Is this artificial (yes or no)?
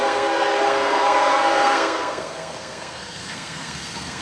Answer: yes